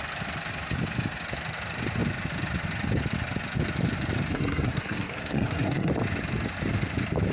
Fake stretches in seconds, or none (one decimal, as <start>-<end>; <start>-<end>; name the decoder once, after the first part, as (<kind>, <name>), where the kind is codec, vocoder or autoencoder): 4.3-5.9 (codec, SNAC)